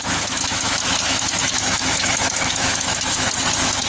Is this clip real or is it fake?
fake